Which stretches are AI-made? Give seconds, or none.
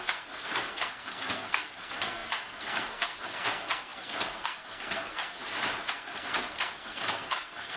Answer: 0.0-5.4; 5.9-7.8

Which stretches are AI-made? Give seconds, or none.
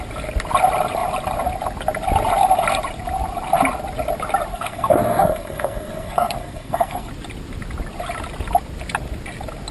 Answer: 4.5-7.1